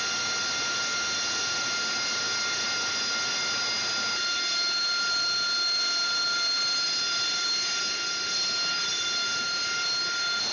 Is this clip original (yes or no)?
yes